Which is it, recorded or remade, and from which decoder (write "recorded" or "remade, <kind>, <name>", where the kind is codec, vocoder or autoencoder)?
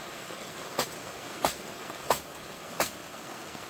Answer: remade, codec, SNAC